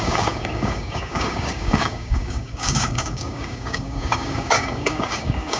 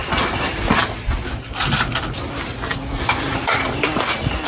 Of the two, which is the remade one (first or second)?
first